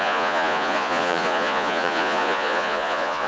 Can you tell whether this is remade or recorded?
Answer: remade